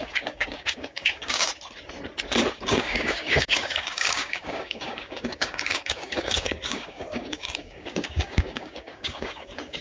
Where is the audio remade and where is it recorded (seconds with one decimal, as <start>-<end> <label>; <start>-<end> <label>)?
0.0-1.5 remade; 1.5-2.5 recorded; 2.5-9.8 remade

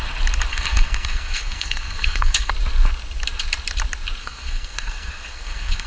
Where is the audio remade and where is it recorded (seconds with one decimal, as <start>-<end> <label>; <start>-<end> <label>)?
0.0-0.5 recorded; 0.5-2.5 remade; 2.5-4.2 recorded; 4.2-5.9 remade

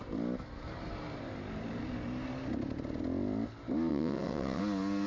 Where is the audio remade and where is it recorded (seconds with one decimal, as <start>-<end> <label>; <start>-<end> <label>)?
0.0-3.9 recorded; 3.9-4.6 remade; 4.6-5.1 recorded

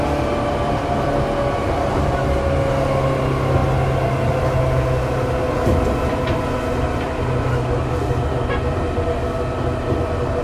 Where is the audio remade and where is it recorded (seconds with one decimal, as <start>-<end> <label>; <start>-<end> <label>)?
0.0-10.4 recorded

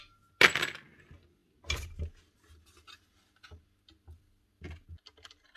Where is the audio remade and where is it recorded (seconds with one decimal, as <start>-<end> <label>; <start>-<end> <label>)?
0.0-5.6 recorded

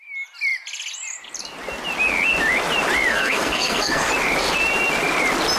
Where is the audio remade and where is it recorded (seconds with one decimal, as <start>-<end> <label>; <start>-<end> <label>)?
0.0-3.1 recorded; 3.1-4.1 remade; 4.1-5.6 recorded